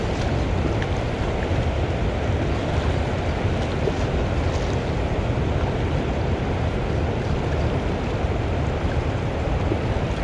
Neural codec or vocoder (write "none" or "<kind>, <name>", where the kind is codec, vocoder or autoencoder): none